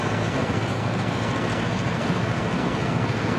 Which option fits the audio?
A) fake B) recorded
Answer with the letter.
A